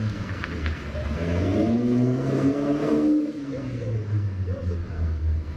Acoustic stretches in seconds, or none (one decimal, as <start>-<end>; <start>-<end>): none